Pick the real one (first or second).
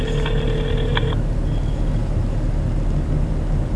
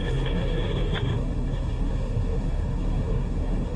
first